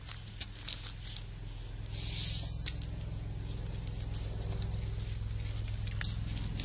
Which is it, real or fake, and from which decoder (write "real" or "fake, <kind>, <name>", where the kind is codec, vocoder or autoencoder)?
real